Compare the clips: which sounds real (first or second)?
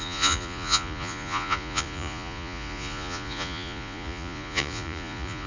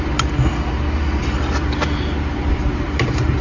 second